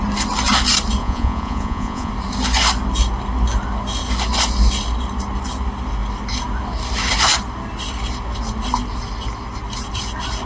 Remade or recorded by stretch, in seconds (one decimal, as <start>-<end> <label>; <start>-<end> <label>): 0.0-1.0 recorded; 1.0-2.1 remade; 2.1-10.5 recorded